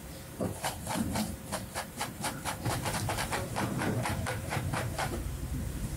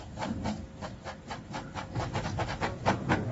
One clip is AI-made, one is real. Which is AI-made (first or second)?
first